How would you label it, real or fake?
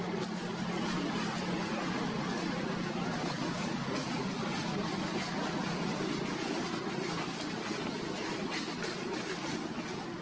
real